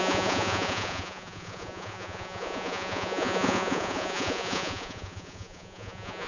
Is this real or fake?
fake